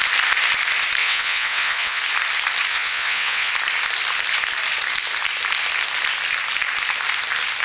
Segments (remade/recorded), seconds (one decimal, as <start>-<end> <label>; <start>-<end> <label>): 0.0-1.0 recorded; 1.0-2.0 remade; 2.0-2.7 recorded; 2.7-3.5 remade; 3.5-7.6 recorded